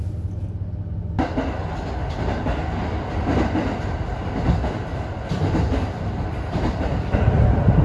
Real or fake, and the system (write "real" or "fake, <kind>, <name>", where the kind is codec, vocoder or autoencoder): real